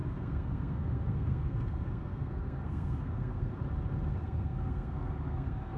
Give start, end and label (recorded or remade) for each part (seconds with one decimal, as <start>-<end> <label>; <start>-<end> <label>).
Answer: 0.0-3.5 remade; 3.5-4.1 recorded; 4.1-5.8 remade